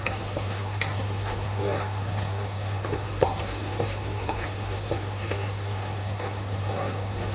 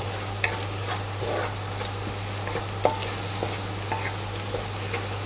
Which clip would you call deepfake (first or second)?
first